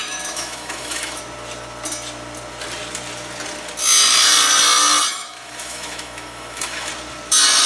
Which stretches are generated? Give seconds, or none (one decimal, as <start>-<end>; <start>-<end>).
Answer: 0.0-1.2; 5.1-6.9